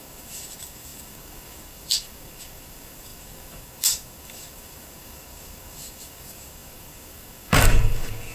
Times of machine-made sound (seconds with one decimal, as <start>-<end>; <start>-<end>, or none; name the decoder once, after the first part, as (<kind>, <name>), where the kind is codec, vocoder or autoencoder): 0.0-8.3 (codec, DAC)